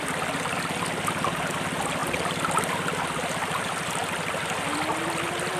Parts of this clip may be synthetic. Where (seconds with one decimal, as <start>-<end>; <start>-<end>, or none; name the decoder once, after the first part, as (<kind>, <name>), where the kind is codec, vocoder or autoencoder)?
none